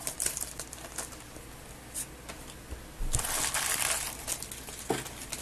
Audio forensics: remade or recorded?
recorded